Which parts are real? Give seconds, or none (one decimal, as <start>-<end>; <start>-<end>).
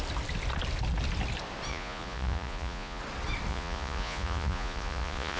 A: 0.0-1.7; 3.0-3.5